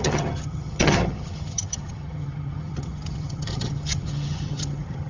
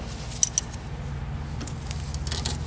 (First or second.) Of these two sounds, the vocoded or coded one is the first